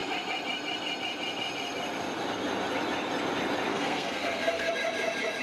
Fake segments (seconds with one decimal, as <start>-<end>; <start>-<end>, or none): 3.7-4.7